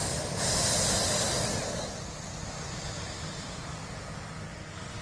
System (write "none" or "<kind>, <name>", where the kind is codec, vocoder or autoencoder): none